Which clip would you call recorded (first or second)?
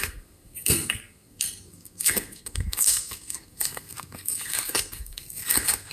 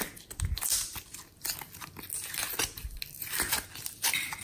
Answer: second